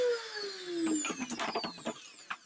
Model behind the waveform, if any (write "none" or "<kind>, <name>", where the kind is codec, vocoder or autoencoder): none